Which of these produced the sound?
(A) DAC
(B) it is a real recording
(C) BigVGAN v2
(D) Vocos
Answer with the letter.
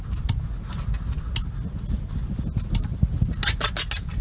B